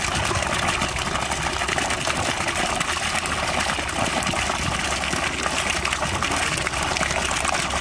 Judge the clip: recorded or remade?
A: recorded